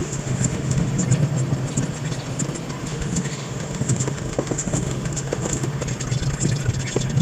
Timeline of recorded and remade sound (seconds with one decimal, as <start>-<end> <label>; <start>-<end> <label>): 0.0-0.9 remade; 0.9-2.8 recorded; 2.8-5.8 remade; 5.8-7.2 recorded